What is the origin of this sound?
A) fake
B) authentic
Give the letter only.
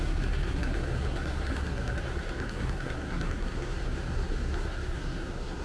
A